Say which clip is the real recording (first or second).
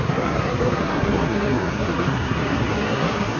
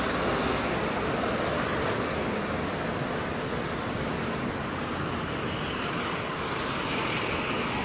second